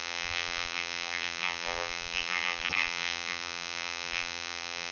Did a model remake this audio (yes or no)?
yes